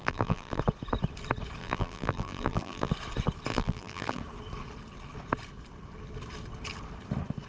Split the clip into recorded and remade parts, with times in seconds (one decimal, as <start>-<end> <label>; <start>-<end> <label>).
0.0-0.6 remade; 0.6-1.6 recorded; 1.6-2.9 remade; 2.9-3.5 recorded; 3.5-4.2 remade; 4.2-7.5 recorded